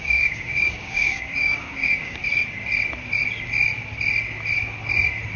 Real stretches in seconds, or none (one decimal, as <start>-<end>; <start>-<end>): 2.2-5.4